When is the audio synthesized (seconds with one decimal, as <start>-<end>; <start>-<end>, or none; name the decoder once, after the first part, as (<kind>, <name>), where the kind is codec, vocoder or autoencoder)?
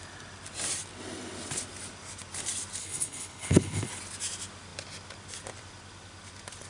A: 2.8-3.9 (codec, HILCodec)